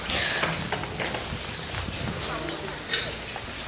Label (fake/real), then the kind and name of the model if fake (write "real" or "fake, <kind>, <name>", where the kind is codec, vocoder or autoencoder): real